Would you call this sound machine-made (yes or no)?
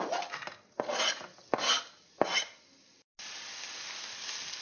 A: no